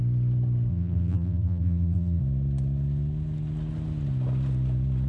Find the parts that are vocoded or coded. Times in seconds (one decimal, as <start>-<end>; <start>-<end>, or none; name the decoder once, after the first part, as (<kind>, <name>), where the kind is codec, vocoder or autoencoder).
0.7-2.2 (vocoder, BigVGAN v2)